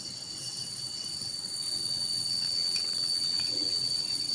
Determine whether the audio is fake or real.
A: fake